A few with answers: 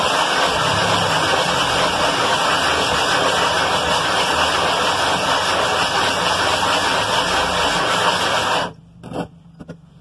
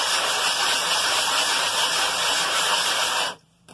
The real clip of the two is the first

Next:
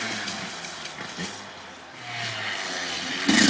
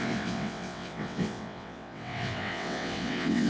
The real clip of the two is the first